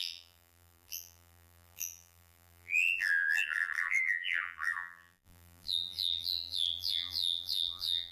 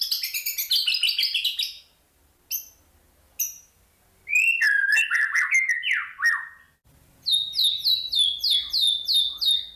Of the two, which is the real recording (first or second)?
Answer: second